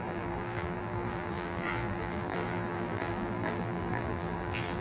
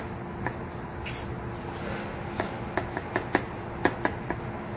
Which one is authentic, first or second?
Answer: second